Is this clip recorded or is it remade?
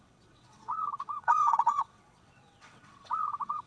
remade